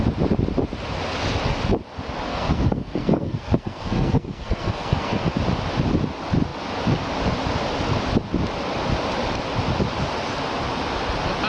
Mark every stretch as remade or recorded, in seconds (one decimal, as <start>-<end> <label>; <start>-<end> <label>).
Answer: 0.0-2.3 recorded; 2.3-5.4 remade; 5.4-11.5 recorded